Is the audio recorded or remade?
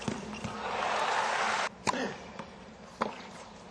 recorded